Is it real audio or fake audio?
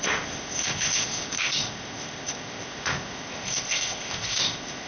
fake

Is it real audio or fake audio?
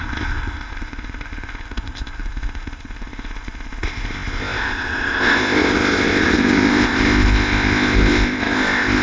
fake